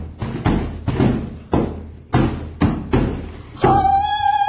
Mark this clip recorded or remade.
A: recorded